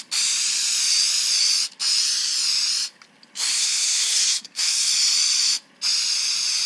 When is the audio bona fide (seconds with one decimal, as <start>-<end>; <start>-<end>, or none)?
0.0-3.5; 4.9-6.7